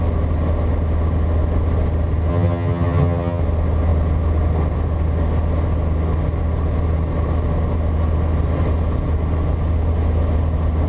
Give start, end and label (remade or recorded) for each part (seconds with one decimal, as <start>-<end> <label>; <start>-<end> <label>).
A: 0.0-2.3 recorded; 2.3-3.4 remade; 3.4-10.9 recorded